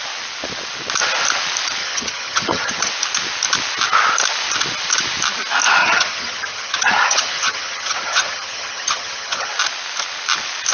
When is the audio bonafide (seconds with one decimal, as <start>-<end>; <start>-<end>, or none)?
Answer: 0.0-1.8; 2.9-5.8; 9.5-10.7